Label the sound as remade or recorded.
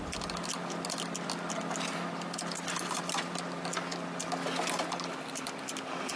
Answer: recorded